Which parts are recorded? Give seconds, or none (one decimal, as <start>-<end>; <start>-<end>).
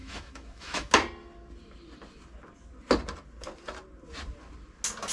0.9-5.1